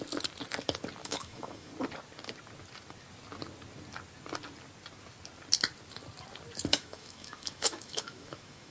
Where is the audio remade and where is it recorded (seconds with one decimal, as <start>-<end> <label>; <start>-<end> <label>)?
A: 0.0-1.0 recorded; 1.0-1.7 remade; 1.7-6.7 recorded; 6.7-8.7 remade